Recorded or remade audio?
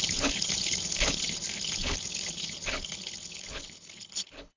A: remade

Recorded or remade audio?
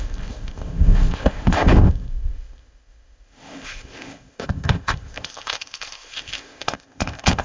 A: remade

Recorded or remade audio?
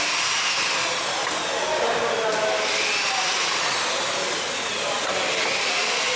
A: recorded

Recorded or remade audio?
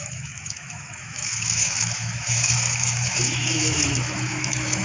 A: remade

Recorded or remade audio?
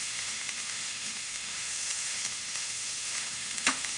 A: remade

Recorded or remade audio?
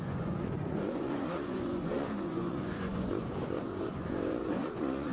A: remade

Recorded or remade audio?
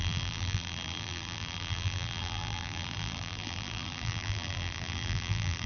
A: remade